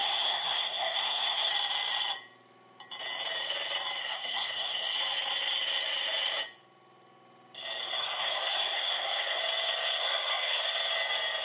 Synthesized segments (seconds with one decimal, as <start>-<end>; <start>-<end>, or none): 0.0-1.5; 4.0-5.0; 8.0-9.4; 10.0-10.6